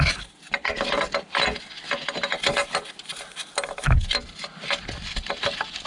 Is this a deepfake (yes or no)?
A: no